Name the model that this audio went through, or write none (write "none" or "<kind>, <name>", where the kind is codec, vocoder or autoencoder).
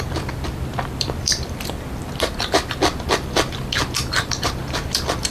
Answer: vocoder, BigVGAN v2